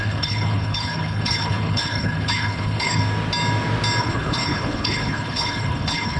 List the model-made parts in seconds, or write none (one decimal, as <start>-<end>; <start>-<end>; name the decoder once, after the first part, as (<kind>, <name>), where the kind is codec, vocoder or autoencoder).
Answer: 0.0-3.0 (codec, HILCodec); 4.0-6.2